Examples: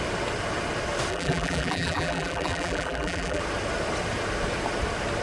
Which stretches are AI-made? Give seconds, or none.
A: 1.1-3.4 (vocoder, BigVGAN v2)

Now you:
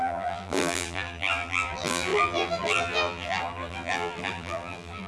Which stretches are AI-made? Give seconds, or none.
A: 0.0-5.1 (vocoder, BigVGAN v2)

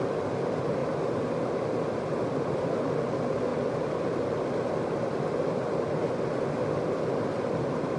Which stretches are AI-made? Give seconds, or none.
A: 0.8-2.9 (vocoder, BigVGAN v2)